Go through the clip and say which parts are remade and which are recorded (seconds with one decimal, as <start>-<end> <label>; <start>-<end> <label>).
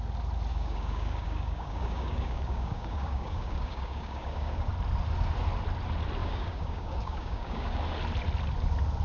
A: 0.0-0.5 recorded; 0.5-4.7 remade; 4.7-6.2 recorded; 6.2-7.8 remade; 7.8-9.0 recorded